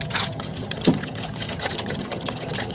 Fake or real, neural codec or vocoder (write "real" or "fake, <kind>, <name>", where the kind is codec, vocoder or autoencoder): fake, vocoder, HiFi-GAN